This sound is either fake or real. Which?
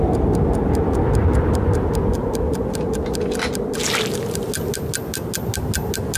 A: real